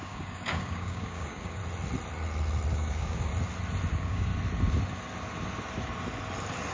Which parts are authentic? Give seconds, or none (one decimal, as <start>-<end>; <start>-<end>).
1.6-2.7; 3.3-3.9; 4.3-6.7